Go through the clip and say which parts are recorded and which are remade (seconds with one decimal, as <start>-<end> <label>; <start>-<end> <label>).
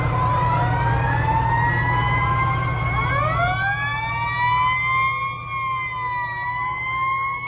0.0-7.5 recorded